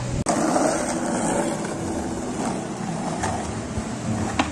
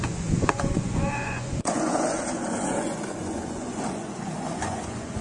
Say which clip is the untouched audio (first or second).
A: first